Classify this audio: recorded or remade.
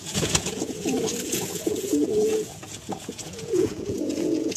remade